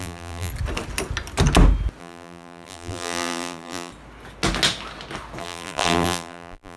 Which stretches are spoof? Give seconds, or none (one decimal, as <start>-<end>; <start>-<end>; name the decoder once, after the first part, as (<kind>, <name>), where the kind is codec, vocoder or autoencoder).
0.0-0.5 (vocoder, BigVGAN v2); 2.0-3.9; 5.4-6.8